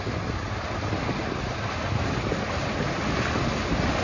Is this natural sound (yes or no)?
yes